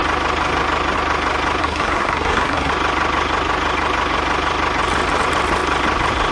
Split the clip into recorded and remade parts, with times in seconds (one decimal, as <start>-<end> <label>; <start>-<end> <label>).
0.0-1.6 recorded; 1.6-2.7 remade; 2.7-6.3 recorded